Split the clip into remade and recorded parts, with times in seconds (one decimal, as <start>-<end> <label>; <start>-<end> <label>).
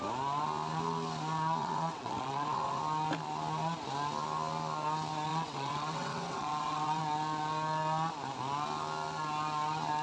0.0-1.6 recorded; 1.6-2.8 remade; 2.8-5.3 recorded; 5.3-7.0 remade; 7.0-10.0 recorded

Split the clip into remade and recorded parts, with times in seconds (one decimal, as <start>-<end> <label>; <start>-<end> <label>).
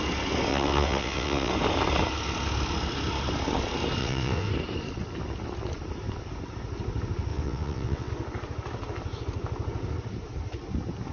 0.0-0.5 recorded; 0.5-1.5 remade; 1.5-4.0 recorded; 4.0-4.5 remade; 4.5-7.3 recorded; 7.3-8.1 remade; 8.1-11.1 recorded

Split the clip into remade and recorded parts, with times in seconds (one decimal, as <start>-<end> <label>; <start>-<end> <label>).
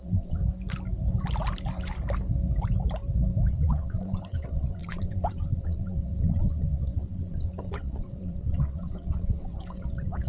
0.0-0.4 remade; 0.4-3.5 recorded; 3.5-10.3 remade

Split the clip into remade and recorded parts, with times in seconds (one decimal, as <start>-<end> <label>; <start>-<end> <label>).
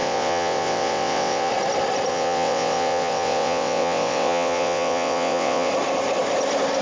0.0-1.5 remade; 1.5-2.1 recorded; 2.1-5.7 remade; 5.7-6.8 recorded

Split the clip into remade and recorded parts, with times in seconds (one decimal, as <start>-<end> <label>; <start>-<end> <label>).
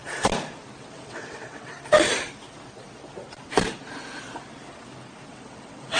0.0-0.8 recorded; 0.8-1.7 remade; 1.7-5.3 recorded; 5.3-6.0 remade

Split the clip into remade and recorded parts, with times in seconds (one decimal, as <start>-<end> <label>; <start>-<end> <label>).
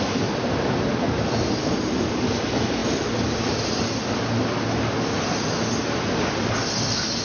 0.0-7.2 recorded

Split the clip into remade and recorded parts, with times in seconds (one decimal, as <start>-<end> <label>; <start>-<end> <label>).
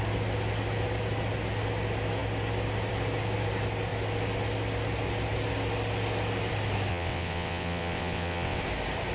0.0-6.9 recorded; 6.9-8.6 remade; 8.6-9.1 recorded